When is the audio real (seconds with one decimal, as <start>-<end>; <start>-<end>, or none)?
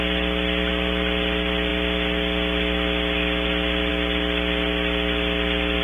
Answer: 0.0-5.8